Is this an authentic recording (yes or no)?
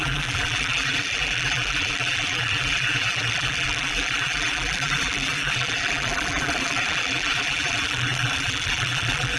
no